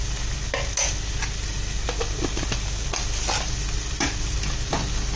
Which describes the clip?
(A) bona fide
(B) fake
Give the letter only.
A